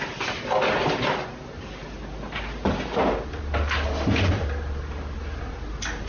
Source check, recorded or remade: recorded